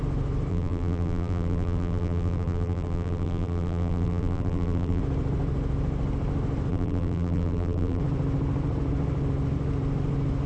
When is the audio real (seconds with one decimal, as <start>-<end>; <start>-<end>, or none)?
0.0-0.5; 5.0-6.7; 8.0-10.5